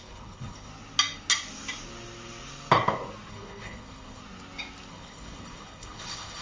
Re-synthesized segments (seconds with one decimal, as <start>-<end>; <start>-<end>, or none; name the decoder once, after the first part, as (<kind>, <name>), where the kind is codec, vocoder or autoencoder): 0.0-0.7 (codec, HILCodec); 3.3-4.2; 4.9-6.4